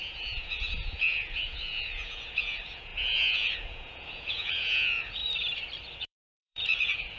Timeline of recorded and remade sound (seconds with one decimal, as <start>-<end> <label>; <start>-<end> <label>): 0.0-5.2 remade; 5.2-6.0 recorded; 6.0-7.2 remade